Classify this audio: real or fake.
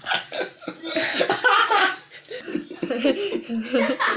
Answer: real